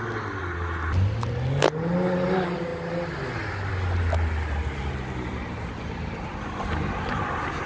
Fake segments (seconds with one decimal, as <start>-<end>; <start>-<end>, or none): 5.3-6.3